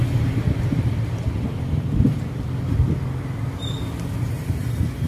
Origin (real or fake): real